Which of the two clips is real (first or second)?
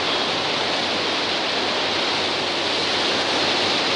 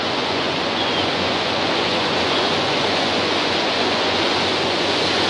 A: first